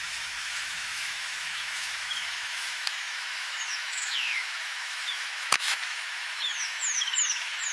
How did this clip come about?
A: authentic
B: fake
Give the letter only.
B